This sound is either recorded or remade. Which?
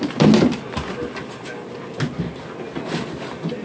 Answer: recorded